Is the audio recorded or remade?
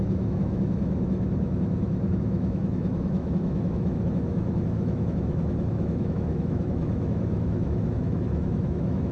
remade